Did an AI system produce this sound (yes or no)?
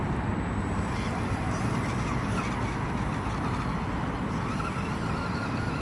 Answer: no